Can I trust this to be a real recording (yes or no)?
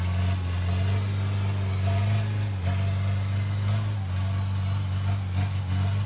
yes